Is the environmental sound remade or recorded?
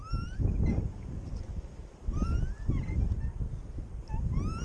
recorded